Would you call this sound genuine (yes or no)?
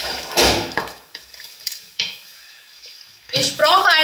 no